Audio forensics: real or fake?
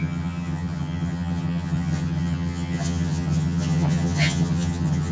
fake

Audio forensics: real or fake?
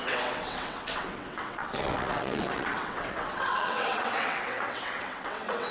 fake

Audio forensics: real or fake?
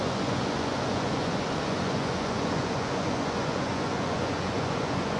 fake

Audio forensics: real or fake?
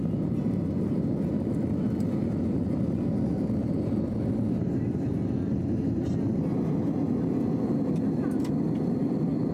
real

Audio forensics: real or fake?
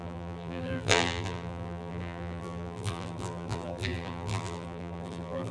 fake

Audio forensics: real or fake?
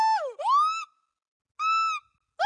real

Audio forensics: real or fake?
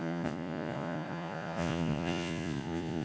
fake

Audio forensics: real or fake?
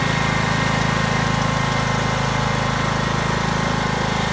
real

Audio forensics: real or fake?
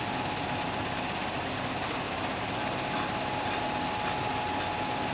real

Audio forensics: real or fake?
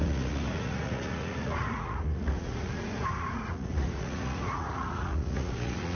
fake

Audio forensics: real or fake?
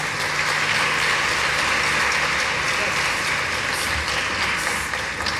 real